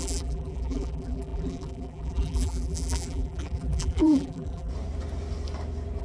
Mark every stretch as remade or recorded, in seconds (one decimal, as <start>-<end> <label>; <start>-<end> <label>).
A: 0.0-4.7 remade; 4.7-6.0 recorded

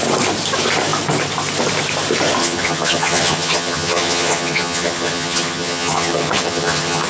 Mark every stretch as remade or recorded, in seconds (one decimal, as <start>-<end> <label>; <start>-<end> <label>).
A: 0.0-2.4 recorded; 2.4-7.1 remade

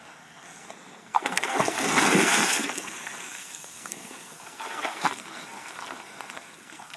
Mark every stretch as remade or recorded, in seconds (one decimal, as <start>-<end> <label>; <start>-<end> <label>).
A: 0.0-7.0 remade

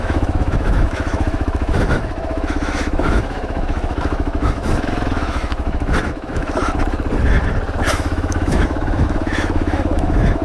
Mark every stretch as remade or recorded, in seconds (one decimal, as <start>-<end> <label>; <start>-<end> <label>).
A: 0.0-6.6 remade; 6.6-7.9 recorded; 7.9-10.4 remade